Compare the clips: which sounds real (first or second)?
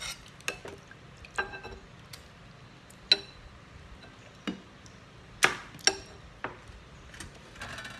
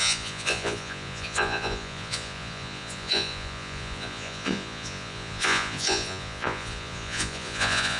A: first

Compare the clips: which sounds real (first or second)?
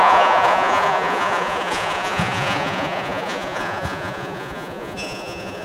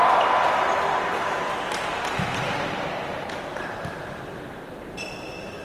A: second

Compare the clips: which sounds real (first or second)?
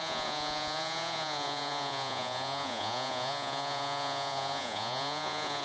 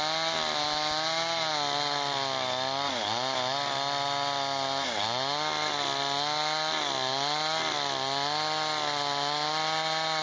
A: second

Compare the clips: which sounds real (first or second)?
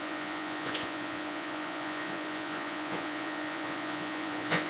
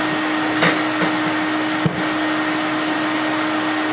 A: second